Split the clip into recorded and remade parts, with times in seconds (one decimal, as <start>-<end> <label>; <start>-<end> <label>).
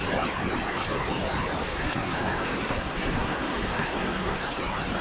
0.0-1.6 recorded; 1.6-4.6 remade; 4.6-5.0 recorded